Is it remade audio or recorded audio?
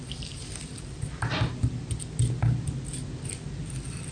recorded